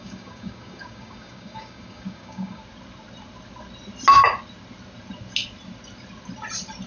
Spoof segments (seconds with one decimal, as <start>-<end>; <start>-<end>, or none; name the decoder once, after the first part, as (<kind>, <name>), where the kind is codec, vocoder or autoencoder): 0.0-2.6 (codec, DAC)